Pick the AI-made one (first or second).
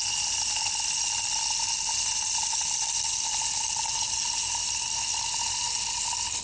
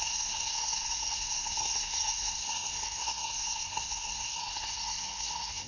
second